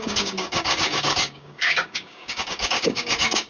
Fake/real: fake